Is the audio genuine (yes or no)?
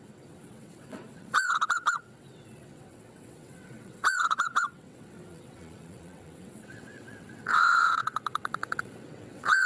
no